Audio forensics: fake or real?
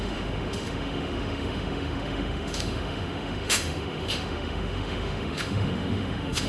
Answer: fake